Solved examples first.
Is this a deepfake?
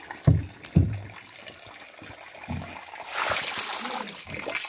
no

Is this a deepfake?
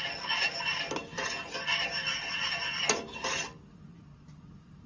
no